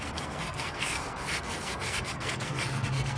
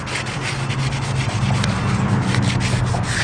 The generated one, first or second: first